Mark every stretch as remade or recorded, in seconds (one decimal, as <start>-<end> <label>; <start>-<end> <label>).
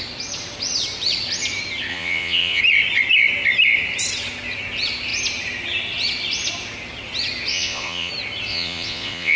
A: 0.0-1.9 recorded; 1.9-2.6 remade; 2.6-7.5 recorded; 7.5-8.1 remade; 8.1-8.5 recorded; 8.5-9.4 remade